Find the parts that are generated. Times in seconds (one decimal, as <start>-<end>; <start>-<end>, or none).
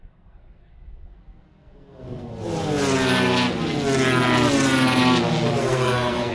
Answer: 0.0-2.3; 5.6-6.3